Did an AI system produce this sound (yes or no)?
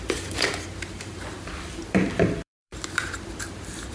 yes